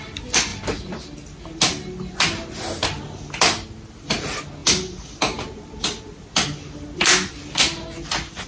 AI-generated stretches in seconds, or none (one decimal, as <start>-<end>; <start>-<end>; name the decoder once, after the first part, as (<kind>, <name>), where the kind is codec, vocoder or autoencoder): none